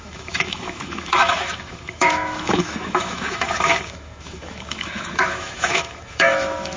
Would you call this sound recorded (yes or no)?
no